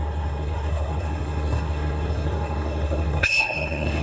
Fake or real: fake